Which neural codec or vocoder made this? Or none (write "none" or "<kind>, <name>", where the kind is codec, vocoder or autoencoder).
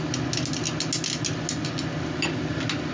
none